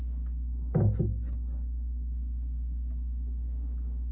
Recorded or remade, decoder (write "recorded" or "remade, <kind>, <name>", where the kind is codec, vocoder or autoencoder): recorded